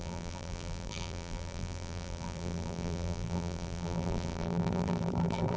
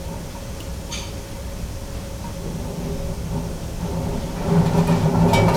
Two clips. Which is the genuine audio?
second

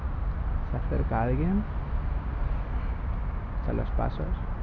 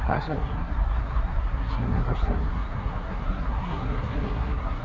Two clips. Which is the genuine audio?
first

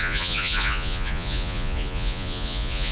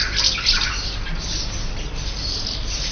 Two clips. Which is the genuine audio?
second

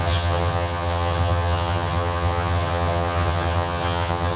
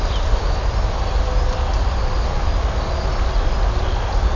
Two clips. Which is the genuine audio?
second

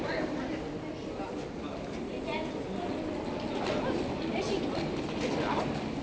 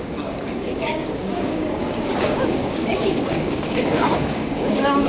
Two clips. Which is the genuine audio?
first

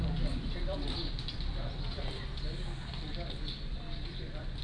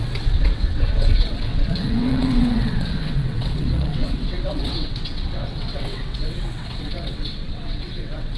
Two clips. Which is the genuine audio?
first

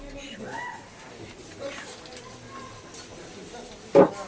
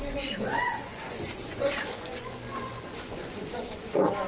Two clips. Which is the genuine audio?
first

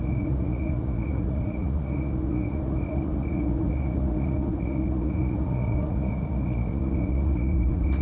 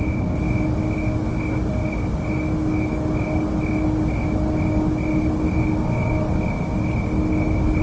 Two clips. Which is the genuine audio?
second